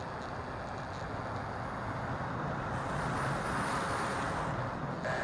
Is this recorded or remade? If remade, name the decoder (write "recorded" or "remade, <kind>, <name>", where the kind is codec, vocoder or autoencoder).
recorded